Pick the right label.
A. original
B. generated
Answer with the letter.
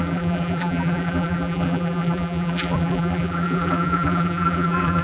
B